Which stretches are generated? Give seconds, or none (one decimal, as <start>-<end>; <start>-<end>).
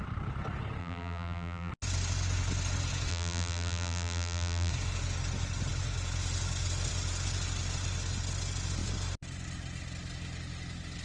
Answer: 0.8-1.7; 3.1-4.7